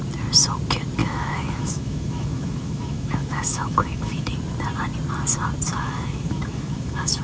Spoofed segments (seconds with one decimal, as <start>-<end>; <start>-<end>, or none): 1.0-4.3; 5.7-7.2